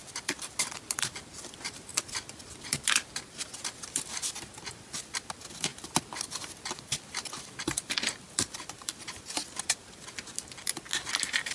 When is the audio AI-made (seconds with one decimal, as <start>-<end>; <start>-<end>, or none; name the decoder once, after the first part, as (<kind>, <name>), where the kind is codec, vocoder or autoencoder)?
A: 0.0-1.1 (vocoder, BigVGAN v2); 5.7-9.0